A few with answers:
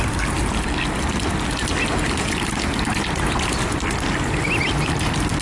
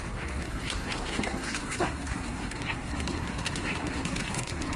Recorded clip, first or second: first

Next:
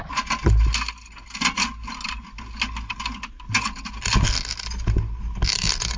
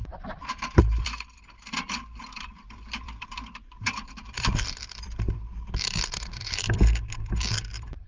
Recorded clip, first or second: first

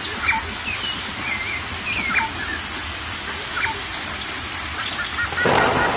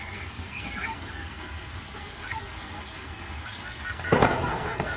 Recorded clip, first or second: first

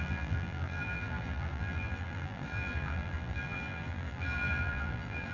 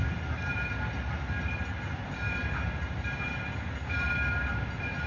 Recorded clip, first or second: second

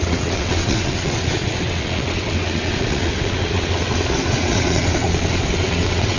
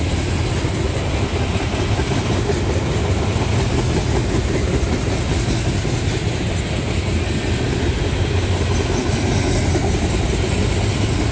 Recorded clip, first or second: second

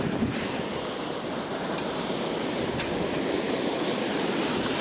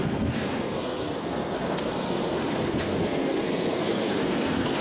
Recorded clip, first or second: first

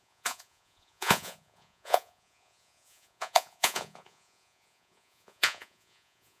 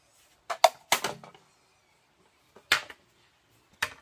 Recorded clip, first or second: second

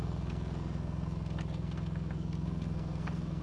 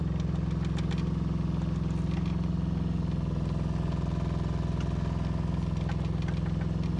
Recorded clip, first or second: second